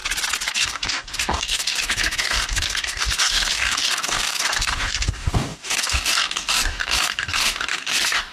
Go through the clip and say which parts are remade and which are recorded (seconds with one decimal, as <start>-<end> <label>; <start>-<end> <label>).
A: 0.0-0.5 recorded; 0.5-8.3 remade